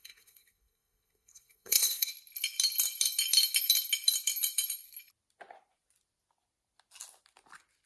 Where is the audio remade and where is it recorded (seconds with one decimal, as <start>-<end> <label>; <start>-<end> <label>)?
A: 0.0-2.1 remade; 2.1-7.9 recorded